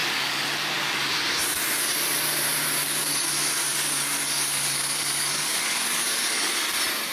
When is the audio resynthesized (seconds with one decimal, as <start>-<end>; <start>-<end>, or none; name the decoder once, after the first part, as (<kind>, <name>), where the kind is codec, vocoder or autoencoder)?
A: 0.0-1.1 (codec, DAC); 2.8-3.3; 3.7-6.5